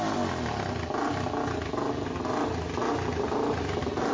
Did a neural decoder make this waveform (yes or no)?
no